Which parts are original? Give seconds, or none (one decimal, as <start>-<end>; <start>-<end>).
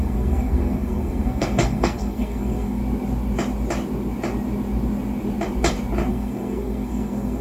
2.8-6.1